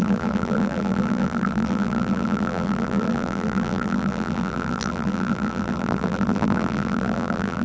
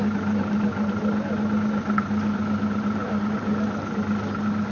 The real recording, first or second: second